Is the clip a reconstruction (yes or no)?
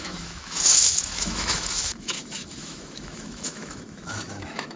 yes